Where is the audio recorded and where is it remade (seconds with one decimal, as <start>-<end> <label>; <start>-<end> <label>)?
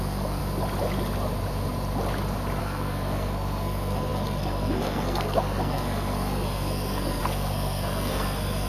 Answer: 0.0-0.4 remade; 0.4-2.6 recorded; 2.6-8.7 remade